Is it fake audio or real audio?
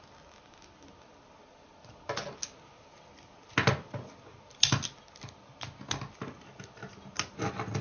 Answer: real